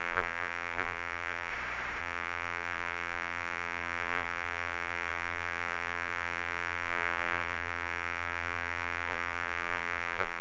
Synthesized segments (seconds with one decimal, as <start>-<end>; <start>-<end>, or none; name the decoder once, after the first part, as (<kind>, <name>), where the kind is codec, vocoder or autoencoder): 0.0-1.5 (vocoder, BigVGAN v2); 2.0-10.4